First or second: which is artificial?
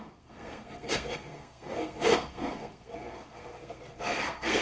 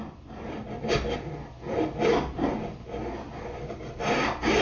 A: first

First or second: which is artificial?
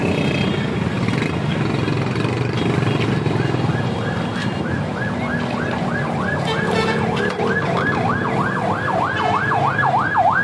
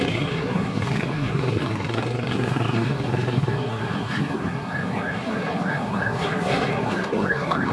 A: second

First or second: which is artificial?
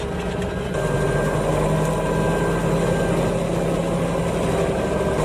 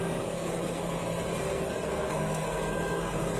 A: second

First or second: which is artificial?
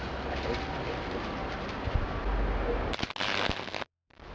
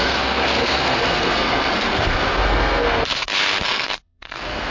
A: second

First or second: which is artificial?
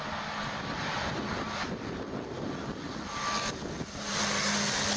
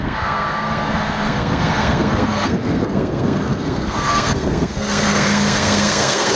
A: second